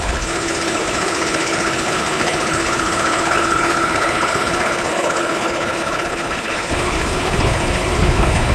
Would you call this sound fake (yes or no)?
yes